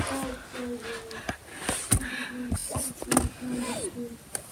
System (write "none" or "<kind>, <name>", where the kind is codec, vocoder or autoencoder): none